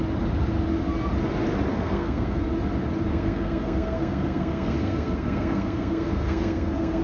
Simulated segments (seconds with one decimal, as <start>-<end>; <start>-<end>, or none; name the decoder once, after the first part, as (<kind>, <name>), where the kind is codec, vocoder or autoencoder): 1.7-2.4 (codec, SNAC); 3.1-7.0